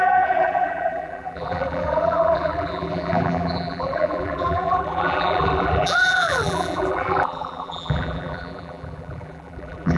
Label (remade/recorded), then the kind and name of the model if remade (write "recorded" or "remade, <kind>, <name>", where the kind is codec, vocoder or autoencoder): remade, vocoder, BigVGAN v2